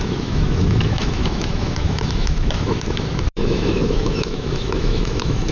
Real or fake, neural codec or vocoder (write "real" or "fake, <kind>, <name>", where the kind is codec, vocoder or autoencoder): fake, autoencoder, DAC-VAE